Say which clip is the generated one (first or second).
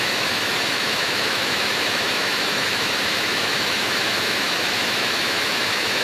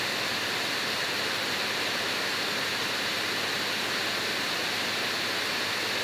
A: first